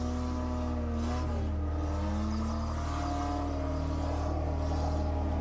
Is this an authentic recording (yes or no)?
yes